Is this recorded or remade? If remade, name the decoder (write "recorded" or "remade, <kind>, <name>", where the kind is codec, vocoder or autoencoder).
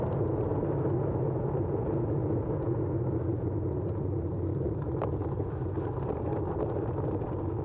recorded